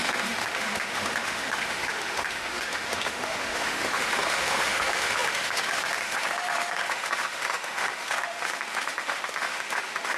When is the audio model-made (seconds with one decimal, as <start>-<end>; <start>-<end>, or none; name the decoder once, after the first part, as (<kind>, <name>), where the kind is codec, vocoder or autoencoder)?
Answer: 0.0-10.2 (autoencoder, DAC-VAE)